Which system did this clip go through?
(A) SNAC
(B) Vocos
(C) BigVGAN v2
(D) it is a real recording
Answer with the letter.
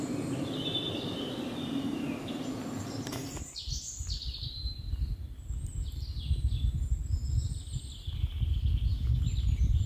D